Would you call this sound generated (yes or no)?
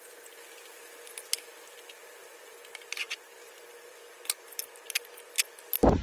no